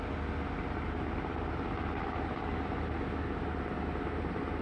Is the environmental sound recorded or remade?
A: recorded